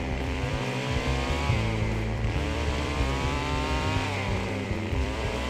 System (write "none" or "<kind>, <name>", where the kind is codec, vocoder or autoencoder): vocoder, BigVGAN v2